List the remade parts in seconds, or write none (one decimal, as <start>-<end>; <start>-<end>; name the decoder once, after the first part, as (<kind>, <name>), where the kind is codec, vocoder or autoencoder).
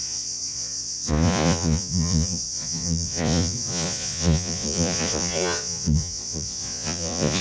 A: 0.0-7.4 (vocoder, Vocos)